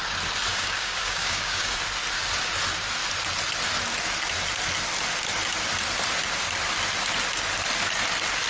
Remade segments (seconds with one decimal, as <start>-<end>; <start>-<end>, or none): 0.5-1.8